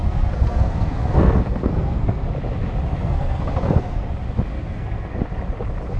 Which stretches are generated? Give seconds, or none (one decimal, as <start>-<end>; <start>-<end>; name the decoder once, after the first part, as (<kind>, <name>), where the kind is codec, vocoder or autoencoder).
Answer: 0.0-2.3 (codec, SNAC); 2.9-4.1; 4.5-5.2

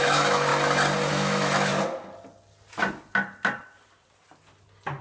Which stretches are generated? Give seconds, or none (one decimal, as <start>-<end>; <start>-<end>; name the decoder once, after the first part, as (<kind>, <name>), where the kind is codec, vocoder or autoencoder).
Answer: 0.0-0.5 (autoencoder, DAC-VAE); 1.1-1.7

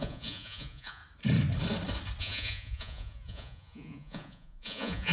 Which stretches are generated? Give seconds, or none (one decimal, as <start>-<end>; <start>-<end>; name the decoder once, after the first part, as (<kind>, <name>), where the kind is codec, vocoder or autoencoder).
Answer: 0.0-1.0 (vocoder, Vocos); 2.2-5.1